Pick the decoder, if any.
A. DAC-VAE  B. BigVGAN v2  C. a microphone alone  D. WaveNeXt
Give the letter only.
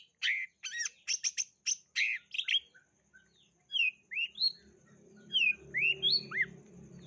C